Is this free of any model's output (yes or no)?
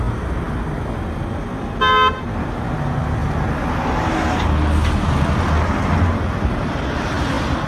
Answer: yes